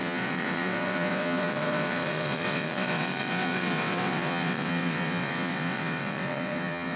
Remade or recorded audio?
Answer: remade